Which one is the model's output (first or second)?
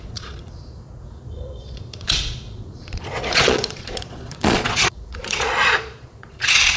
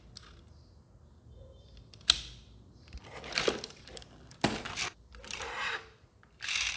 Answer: first